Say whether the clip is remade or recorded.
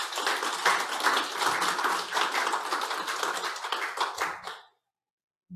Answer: recorded